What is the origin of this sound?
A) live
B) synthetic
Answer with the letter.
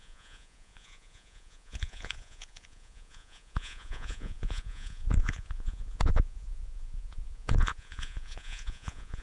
B